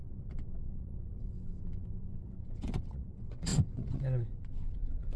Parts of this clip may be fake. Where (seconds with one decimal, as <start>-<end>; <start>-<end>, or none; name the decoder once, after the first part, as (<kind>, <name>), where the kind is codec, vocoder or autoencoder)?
0.0-5.2 (vocoder, WaveNeXt)